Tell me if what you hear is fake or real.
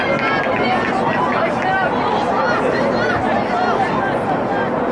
real